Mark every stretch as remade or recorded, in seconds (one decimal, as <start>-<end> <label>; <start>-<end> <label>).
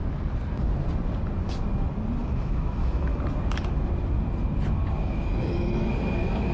0.0-2.2 recorded; 2.2-3.2 remade; 3.2-5.0 recorded; 5.0-5.9 remade; 5.9-6.5 recorded